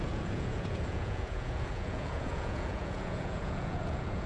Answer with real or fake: fake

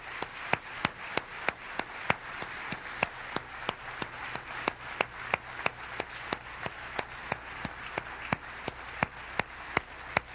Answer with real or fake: real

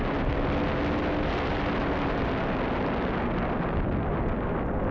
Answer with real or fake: real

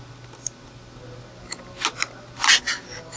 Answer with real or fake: real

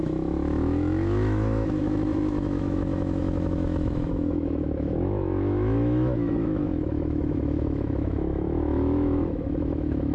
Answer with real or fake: fake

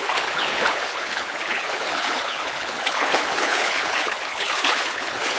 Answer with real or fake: fake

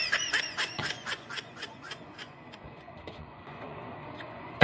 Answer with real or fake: fake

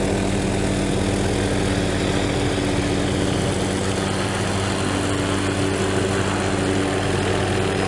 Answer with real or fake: real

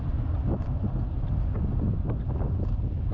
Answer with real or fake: real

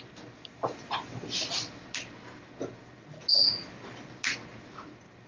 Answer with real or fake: real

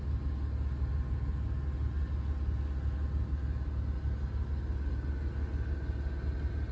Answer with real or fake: real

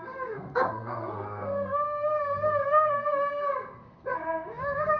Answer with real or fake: fake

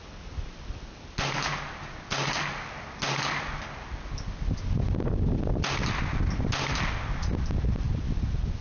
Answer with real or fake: real